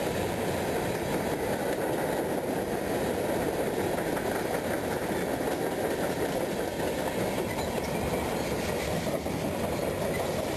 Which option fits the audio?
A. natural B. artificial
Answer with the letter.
A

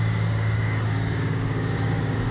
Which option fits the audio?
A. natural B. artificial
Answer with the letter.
B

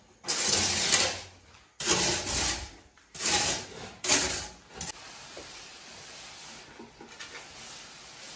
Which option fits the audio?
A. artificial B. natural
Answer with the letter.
B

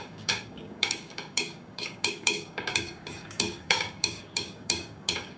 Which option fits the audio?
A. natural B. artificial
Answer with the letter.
B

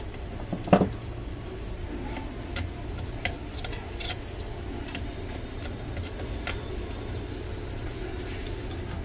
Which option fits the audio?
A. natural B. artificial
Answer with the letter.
A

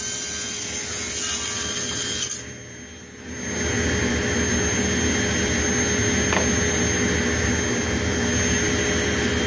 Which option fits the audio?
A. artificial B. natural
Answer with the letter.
B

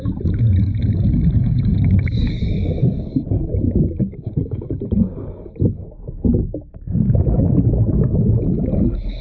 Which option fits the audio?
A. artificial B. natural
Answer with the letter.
A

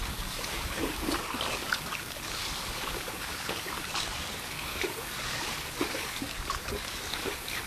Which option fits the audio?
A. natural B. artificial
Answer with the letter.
B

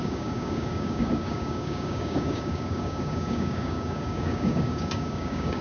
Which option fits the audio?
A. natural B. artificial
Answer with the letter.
B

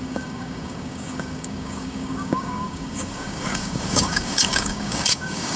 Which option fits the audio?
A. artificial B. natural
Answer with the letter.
A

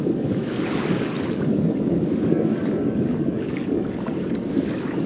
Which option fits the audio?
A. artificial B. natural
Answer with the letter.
A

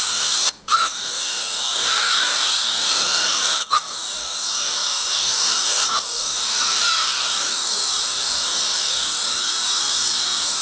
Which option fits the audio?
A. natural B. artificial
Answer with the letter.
B